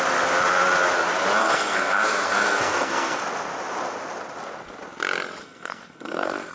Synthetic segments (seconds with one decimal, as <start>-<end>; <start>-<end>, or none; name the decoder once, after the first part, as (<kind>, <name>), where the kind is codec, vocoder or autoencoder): 1.4-3.2 (codec, SNAC); 5.4-6.5